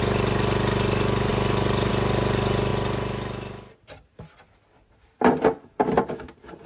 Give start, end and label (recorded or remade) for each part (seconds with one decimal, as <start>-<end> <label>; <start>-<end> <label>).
0.0-6.7 recorded